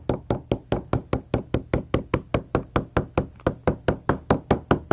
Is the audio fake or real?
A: real